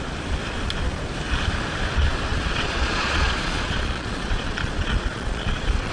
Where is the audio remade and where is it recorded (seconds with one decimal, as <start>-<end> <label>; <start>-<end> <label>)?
0.0-2.3 recorded; 2.3-5.9 remade